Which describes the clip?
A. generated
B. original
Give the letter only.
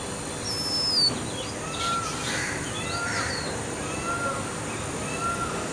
B